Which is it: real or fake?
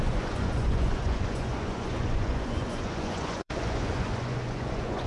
fake